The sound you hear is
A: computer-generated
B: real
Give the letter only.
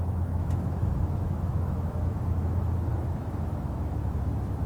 A